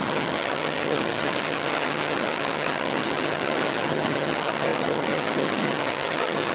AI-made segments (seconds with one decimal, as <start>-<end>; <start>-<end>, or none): 0.0-6.5